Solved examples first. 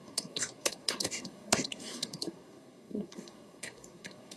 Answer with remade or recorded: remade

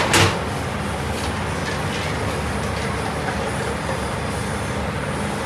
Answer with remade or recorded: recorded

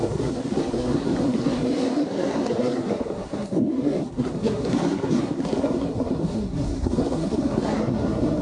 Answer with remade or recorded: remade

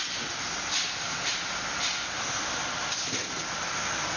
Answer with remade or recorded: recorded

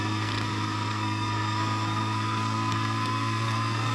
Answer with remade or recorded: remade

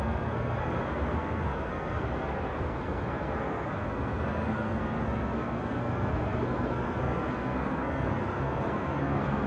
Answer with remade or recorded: remade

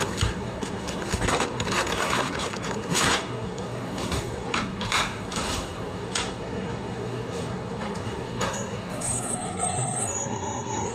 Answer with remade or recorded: remade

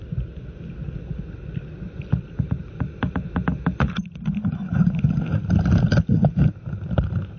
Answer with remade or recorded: recorded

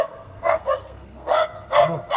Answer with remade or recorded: remade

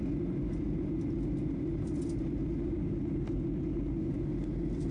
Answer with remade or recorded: recorded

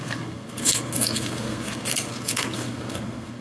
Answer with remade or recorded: remade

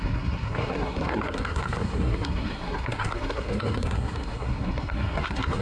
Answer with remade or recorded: remade